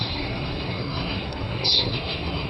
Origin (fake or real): fake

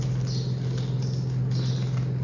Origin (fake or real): real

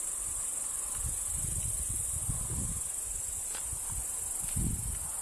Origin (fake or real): real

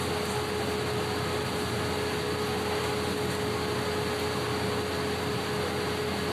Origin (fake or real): real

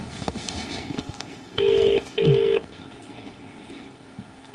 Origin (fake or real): fake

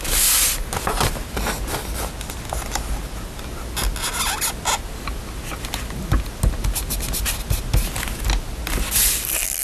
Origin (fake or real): real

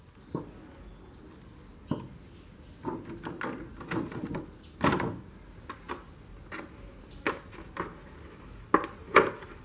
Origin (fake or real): real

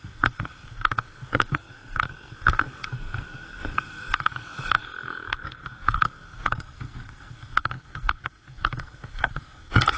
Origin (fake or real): fake